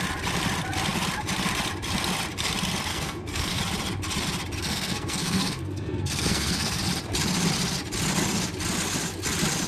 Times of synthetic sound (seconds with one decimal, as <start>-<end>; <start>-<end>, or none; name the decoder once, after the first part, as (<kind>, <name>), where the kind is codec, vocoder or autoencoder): 2.9-3.6 (codec, SNAC); 4.6-6.8